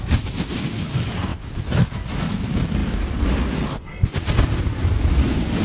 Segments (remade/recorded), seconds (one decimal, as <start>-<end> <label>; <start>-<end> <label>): 0.0-5.6 recorded